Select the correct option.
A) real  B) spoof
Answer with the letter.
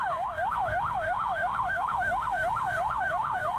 B